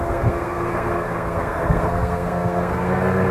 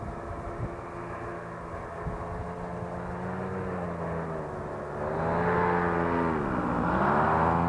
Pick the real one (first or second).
second